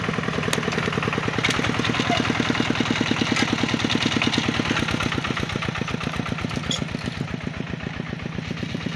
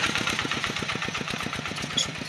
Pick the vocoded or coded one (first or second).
second